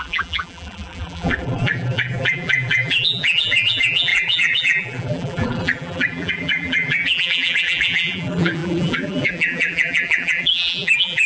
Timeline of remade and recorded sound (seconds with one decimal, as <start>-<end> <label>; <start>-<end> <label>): 0.0-11.3 remade